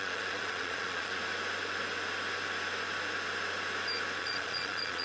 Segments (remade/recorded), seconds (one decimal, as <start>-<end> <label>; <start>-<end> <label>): 0.0-1.2 remade; 1.2-4.2 recorded; 4.2-5.0 remade